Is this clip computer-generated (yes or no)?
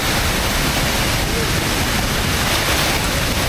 no